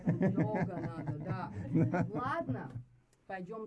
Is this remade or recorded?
recorded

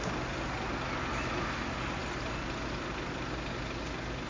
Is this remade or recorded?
recorded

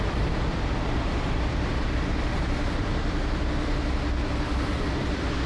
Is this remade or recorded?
recorded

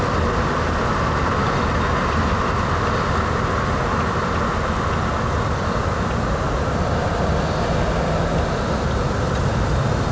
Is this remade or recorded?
recorded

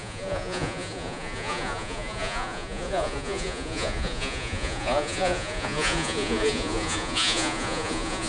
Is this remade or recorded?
remade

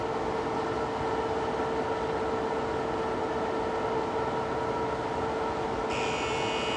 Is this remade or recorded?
recorded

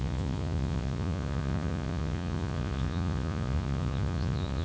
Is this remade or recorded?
remade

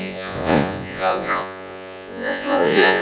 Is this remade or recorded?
remade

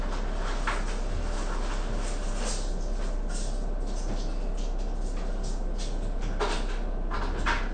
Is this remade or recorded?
recorded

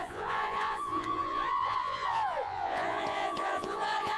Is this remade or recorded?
remade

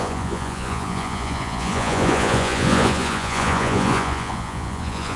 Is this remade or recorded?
remade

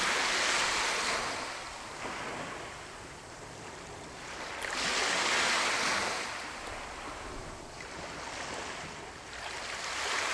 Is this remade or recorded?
recorded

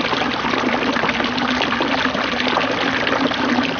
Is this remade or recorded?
recorded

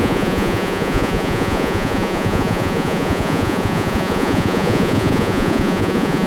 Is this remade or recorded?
remade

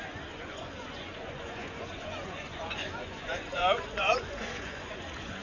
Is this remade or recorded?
remade